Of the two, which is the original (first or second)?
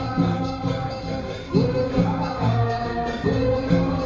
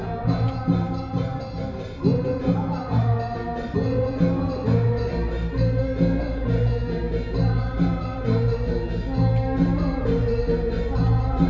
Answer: second